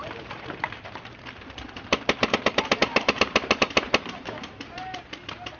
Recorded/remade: remade